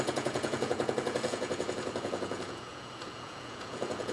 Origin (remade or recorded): remade